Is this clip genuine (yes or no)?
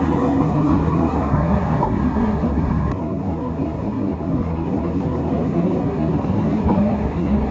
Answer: no